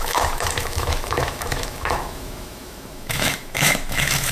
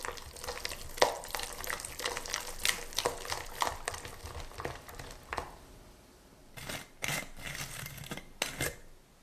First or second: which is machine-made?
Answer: first